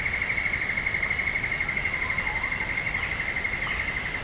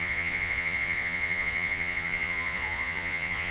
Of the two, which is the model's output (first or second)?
second